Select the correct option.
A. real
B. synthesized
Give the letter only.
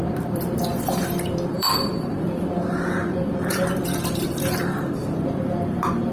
B